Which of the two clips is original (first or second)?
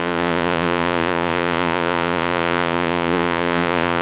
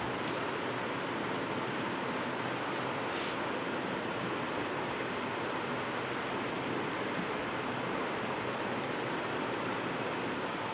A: second